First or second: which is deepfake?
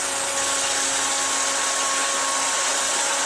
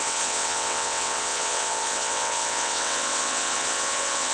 second